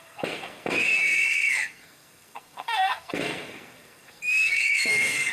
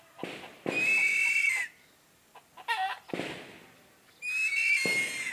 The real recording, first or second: second